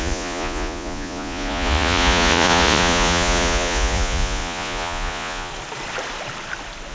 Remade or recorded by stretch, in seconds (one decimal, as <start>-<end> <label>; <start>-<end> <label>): 0.0-5.5 remade; 5.5-6.9 recorded